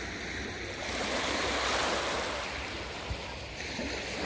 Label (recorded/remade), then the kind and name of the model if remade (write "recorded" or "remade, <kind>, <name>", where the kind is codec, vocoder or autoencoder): recorded